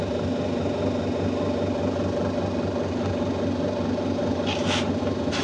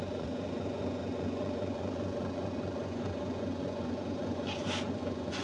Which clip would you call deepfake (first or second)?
second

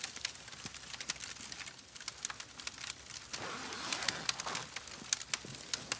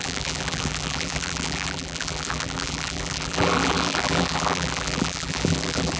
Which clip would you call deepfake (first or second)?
second